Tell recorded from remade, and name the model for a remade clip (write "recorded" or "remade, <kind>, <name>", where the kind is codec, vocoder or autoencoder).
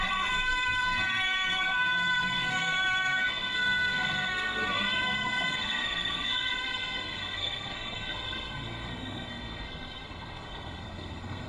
remade, codec, SNAC